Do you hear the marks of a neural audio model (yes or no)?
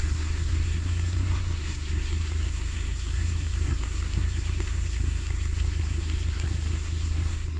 yes